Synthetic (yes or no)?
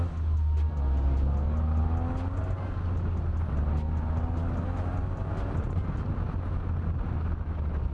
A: no